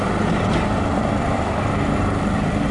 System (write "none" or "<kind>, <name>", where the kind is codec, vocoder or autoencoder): none